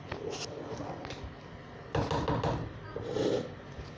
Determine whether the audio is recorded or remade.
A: recorded